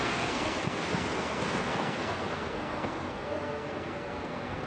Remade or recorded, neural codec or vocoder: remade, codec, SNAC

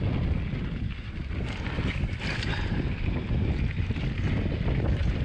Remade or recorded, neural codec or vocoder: remade, vocoder, BigVGAN v2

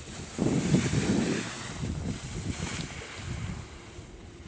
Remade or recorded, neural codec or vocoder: recorded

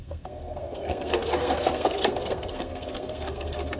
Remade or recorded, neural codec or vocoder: remade, codec, SNAC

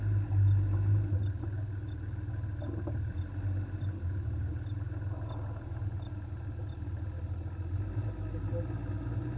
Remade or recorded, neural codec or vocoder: recorded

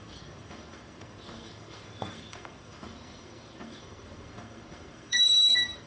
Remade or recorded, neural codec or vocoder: remade, codec, SNAC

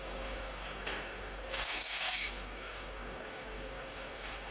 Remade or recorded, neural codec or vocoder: remade, codec, DAC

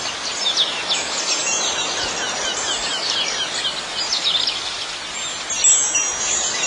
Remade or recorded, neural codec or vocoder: recorded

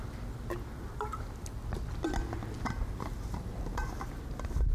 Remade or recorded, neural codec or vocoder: recorded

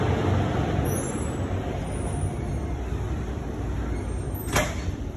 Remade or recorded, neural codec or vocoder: recorded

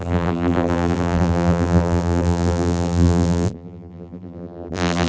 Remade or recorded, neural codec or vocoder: remade, vocoder, BigVGAN v2